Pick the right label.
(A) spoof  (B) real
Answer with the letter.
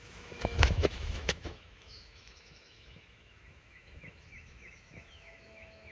A